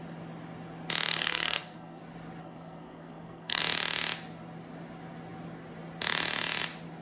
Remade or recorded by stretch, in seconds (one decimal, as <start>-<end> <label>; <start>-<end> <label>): 0.0-1.1 recorded; 1.1-2.0 remade; 2.0-2.4 recorded; 2.4-3.6 remade; 3.6-7.0 recorded